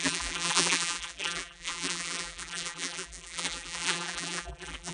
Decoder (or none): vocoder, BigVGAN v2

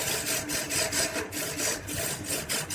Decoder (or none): none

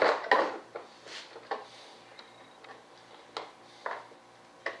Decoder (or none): none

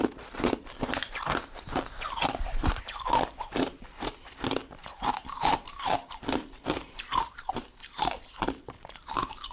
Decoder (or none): vocoder, BigVGAN v2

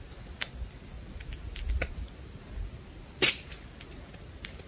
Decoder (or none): none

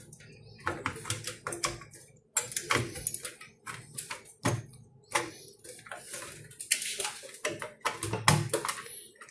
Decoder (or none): none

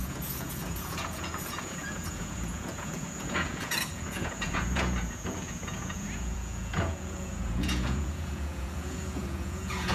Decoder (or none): vocoder, Vocos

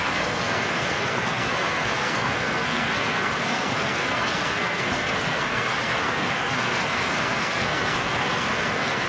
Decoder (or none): codec, SNAC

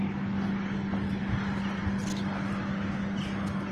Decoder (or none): none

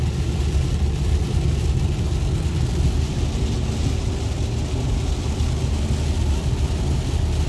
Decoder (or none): none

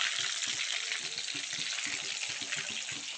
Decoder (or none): none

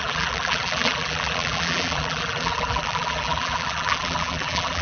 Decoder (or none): vocoder, BigVGAN v2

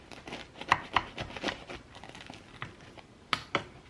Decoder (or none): none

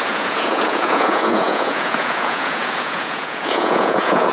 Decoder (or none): vocoder, Vocos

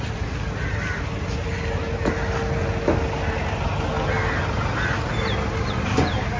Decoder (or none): none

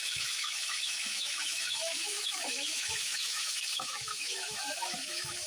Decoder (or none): autoencoder, DAC-VAE